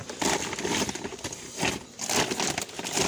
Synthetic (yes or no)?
no